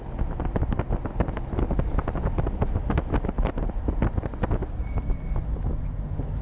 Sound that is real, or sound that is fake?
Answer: real